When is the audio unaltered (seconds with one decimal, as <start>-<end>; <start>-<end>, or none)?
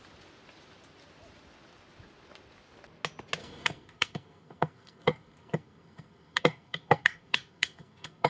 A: 0.0-3.4